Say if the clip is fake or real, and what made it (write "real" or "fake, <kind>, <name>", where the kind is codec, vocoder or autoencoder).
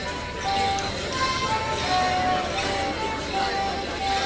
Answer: real